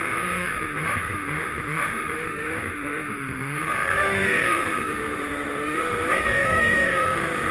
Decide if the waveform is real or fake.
fake